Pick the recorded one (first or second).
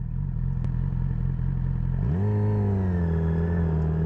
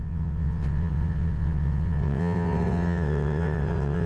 first